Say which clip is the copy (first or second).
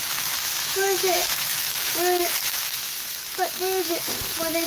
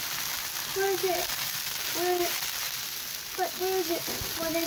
first